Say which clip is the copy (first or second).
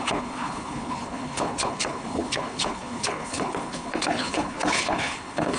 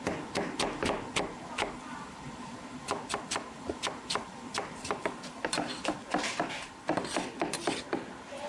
first